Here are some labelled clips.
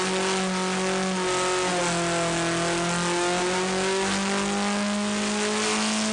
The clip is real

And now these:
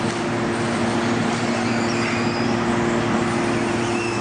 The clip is real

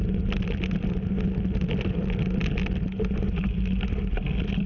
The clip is real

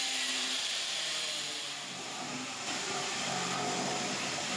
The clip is fake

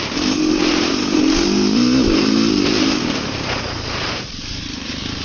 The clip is fake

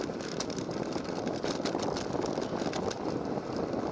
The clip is real